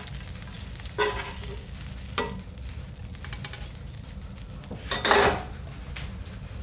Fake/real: real